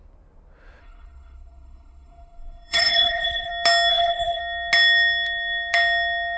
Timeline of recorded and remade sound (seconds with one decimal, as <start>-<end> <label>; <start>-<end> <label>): 0.0-0.8 recorded; 0.8-3.5 remade; 3.5-3.9 recorded; 3.9-4.4 remade; 4.4-6.4 recorded